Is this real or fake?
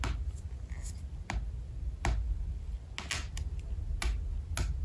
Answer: real